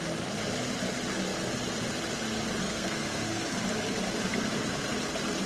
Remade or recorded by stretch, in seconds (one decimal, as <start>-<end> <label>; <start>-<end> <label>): 0.0-2.6 recorded; 2.6-3.4 remade; 3.4-5.5 recorded